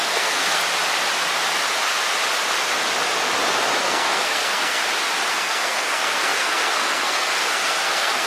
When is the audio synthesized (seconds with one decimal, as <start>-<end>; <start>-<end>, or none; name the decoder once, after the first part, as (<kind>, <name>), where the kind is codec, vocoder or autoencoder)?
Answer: 0.0-0.6 (codec, SNAC); 3.8-4.8; 5.3-8.3